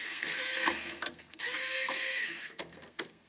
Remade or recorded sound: remade